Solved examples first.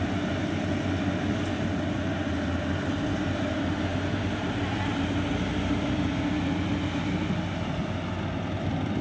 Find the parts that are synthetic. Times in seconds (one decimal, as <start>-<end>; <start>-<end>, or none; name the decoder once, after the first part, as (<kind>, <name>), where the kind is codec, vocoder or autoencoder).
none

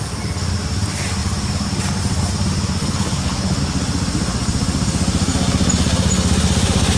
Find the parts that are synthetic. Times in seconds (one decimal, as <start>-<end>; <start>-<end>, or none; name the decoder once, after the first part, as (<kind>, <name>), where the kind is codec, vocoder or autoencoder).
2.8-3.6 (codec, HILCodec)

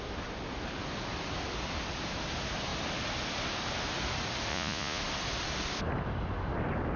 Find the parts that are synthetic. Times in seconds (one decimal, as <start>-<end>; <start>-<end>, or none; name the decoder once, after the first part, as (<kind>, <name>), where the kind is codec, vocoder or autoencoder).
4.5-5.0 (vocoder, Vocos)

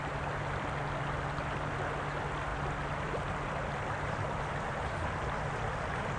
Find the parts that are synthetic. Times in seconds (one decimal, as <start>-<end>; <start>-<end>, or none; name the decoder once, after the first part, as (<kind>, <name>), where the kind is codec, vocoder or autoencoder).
none

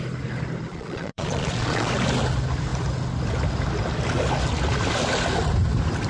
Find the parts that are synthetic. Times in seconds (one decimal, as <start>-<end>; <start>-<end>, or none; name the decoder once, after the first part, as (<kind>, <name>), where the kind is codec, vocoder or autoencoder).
0.7-1.9 (vocoder, Vocos)

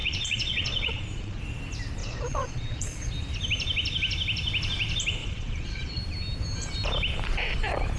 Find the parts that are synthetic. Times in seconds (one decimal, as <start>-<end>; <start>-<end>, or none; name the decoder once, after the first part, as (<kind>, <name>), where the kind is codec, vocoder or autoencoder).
0.0-1.4 (vocoder, Vocos); 2.0-3.1; 5.2-6.0